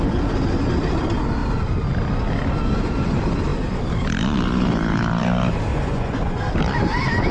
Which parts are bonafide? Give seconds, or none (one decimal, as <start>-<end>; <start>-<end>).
0.0-5.7; 6.4-7.3